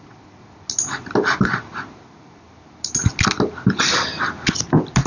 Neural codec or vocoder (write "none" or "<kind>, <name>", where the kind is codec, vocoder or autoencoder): none